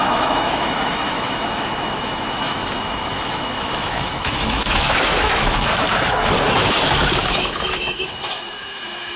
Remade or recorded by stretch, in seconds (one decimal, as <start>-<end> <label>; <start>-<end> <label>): 0.0-9.2 remade